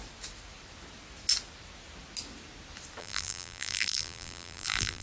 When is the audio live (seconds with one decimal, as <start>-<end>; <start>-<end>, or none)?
0.0-3.0